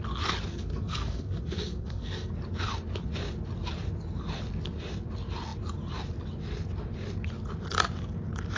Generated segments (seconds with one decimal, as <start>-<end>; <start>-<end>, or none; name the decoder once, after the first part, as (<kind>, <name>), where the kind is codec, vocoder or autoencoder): 0.5-2.3 (codec, SNAC)